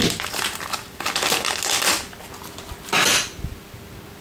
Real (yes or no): yes